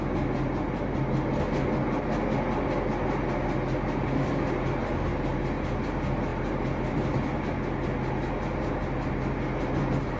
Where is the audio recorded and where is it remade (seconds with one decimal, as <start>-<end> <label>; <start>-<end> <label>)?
0.0-10.2 recorded